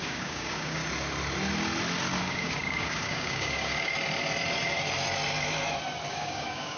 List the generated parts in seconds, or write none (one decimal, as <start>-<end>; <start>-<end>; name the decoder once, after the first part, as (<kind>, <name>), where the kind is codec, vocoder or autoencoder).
0.0-0.8 (codec, DAC); 2.2-3.7; 6.1-6.8

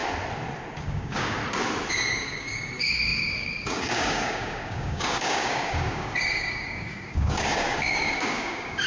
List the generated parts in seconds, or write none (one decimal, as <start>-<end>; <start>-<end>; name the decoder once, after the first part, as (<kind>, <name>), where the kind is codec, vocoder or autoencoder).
0.8-1.4 (codec, DAC); 1.9-8.9

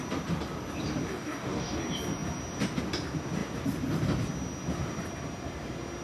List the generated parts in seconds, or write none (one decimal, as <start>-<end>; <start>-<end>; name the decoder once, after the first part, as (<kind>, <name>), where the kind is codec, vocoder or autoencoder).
1.1-1.8 (codec, DAC)

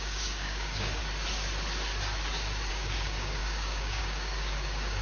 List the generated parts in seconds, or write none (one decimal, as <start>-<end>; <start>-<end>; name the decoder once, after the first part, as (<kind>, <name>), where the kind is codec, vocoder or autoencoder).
0.0-1.0 (codec, DAC); 2.7-5.0

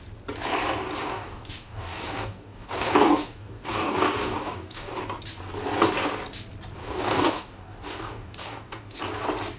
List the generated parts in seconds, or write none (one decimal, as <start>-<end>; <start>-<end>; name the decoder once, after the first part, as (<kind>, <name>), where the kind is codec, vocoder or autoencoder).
1.0-4.9 (codec, DAC); 6.8-9.0